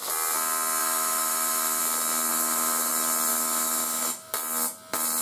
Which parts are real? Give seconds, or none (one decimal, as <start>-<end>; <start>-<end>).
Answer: 0.0-0.8; 1.8-2.3; 2.9-3.3; 4.3-5.2